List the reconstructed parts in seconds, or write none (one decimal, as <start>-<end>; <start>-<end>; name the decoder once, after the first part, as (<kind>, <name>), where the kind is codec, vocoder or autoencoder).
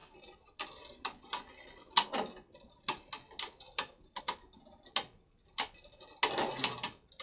none